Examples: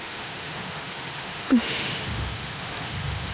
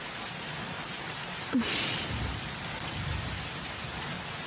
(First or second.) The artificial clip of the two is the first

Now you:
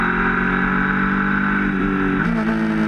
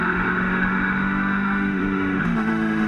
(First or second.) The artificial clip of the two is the second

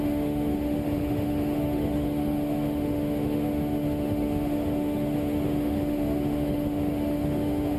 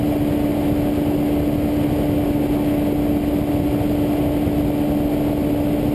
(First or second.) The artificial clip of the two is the first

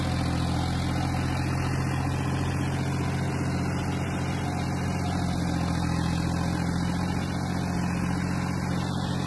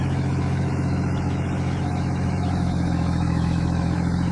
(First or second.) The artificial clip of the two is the second